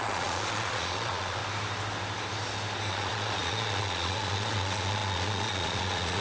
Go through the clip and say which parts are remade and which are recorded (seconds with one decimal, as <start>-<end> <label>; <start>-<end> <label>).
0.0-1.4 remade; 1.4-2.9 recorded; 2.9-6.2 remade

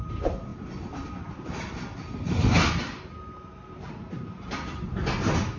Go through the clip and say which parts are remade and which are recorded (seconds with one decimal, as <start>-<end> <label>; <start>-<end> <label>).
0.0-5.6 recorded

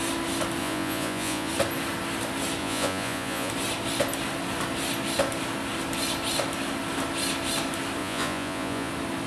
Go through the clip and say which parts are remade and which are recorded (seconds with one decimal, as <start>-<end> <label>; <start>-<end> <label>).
0.0-0.6 recorded; 0.6-1.5 remade; 1.5-2.6 recorded; 2.6-3.5 remade; 3.5-8.0 recorded; 8.0-8.9 remade; 8.9-9.3 recorded

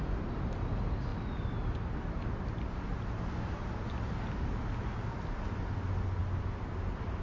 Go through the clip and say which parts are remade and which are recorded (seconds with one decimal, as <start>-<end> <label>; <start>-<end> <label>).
0.0-6.2 recorded; 6.2-7.2 remade

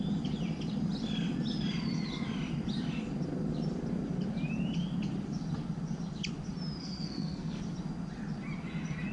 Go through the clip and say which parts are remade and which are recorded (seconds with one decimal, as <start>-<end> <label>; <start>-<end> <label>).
0.0-6.8 recorded; 6.8-7.6 remade; 7.6-9.1 recorded

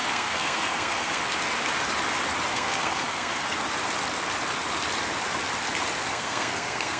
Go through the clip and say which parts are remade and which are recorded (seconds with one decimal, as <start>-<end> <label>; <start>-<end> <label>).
0.0-1.2 remade; 1.2-2.5 recorded; 2.5-3.5 remade; 3.5-6.1 recorded; 6.1-7.0 remade

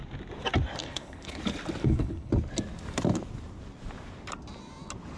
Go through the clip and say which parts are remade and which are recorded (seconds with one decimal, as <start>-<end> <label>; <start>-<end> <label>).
0.0-0.8 recorded; 0.8-1.4 remade; 1.4-1.8 recorded; 1.8-2.3 remade; 2.3-5.2 recorded

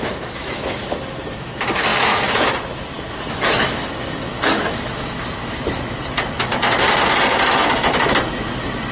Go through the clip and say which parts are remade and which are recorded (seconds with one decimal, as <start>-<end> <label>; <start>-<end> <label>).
0.0-6.5 remade; 6.5-7.7 recorded; 7.7-8.9 remade